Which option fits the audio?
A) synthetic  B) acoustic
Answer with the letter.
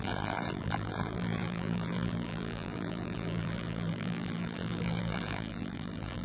A